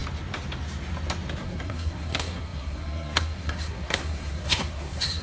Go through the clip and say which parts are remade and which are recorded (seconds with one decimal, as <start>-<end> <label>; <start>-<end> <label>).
0.0-1.4 recorded; 1.4-5.2 remade